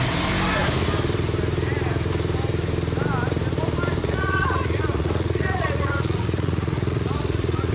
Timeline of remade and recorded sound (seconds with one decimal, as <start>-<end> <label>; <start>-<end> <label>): 0.0-4.0 recorded; 4.0-7.7 remade